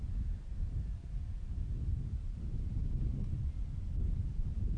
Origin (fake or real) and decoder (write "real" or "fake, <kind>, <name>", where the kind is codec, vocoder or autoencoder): fake, vocoder, BigVGAN v2